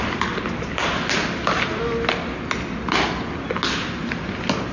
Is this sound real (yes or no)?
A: yes